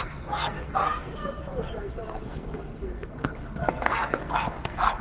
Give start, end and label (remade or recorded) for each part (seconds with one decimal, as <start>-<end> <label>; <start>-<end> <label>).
0.0-5.0 remade